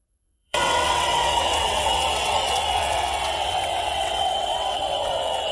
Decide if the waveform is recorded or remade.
remade